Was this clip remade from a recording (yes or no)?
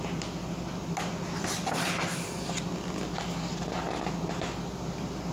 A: no